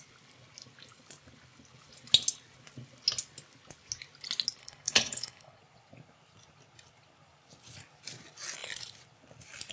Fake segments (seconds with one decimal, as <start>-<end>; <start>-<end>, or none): 4.6-5.6